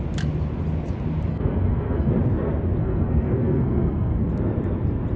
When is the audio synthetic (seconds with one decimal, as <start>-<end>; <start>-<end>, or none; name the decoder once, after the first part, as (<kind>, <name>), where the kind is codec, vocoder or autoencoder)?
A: 1.3-2.1 (codec, SNAC); 2.8-4.3